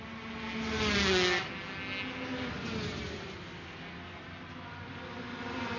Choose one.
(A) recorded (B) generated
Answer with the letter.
A